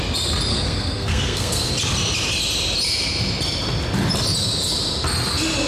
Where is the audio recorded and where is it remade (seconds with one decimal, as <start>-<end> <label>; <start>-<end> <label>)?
0.0-0.5 recorded; 0.5-1.7 remade; 1.7-5.7 recorded